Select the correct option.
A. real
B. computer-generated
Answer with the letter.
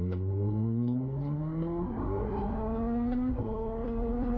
B